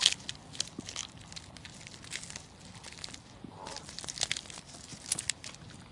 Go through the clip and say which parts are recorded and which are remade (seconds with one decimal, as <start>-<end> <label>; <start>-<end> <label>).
0.0-5.9 recorded